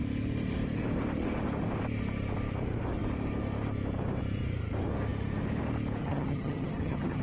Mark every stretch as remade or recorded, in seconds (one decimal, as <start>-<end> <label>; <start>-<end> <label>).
0.0-6.0 recorded; 6.0-7.2 remade